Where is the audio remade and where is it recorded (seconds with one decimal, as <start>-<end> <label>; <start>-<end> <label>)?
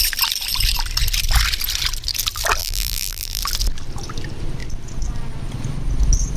0.0-2.6 recorded; 2.6-3.4 remade; 3.4-6.4 recorded